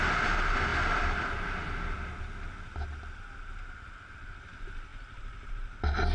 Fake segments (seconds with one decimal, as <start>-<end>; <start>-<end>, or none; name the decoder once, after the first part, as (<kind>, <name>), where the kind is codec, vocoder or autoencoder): 4.9-5.5 (vocoder, BigVGAN v2)